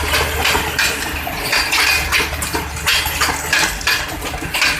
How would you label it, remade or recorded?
recorded